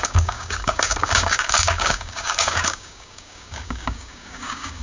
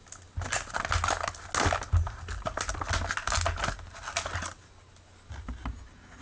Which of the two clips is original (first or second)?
second